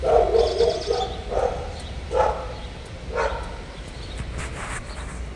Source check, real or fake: real